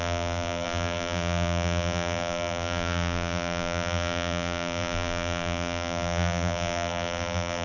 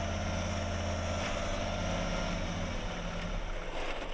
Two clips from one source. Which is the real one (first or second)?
second